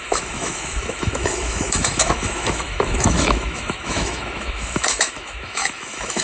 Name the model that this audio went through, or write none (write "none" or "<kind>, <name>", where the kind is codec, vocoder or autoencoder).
autoencoder, DAC-VAE